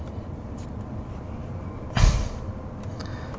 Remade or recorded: recorded